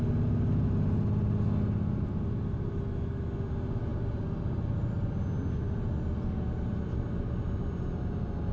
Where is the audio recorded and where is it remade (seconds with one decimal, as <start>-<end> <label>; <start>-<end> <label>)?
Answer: 0.0-3.9 recorded; 3.9-5.2 remade; 5.2-8.5 recorded